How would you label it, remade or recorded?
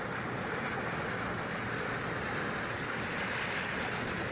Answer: recorded